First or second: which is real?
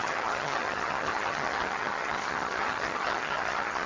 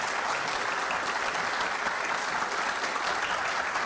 second